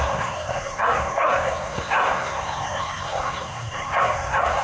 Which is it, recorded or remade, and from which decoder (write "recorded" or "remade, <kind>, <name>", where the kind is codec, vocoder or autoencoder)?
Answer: remade, codec, SNAC